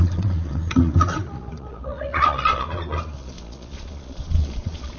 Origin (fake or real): fake